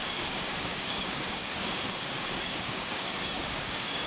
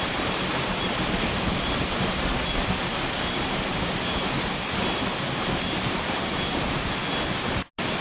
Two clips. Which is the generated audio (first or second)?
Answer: first